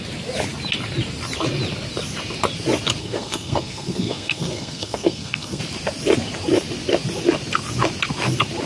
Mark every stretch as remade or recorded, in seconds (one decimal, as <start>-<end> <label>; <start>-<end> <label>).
0.0-3.0 recorded; 3.0-5.6 remade; 5.6-8.7 recorded